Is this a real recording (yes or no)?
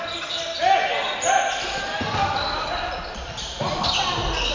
yes